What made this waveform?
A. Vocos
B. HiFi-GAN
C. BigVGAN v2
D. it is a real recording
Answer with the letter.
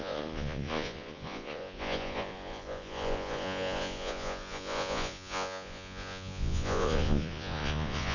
A